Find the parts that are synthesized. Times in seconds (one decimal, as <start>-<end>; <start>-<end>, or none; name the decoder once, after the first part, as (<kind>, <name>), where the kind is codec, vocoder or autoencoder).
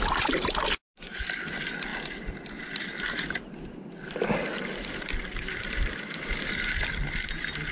none